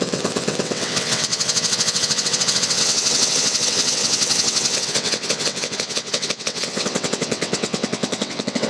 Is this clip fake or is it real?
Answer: fake